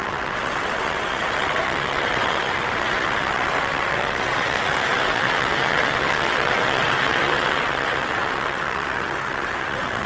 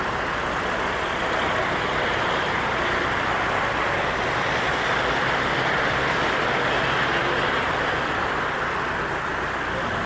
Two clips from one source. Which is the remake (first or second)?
first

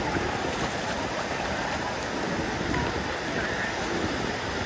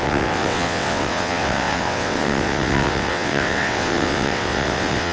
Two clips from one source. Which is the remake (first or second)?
second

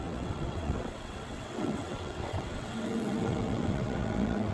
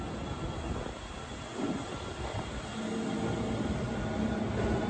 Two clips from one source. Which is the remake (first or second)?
first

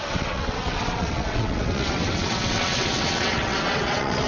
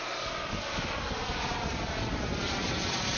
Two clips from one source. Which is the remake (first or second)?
first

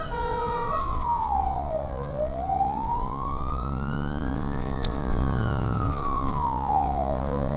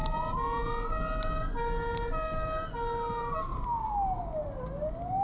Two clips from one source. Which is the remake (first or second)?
first